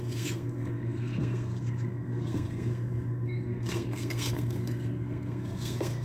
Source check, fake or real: fake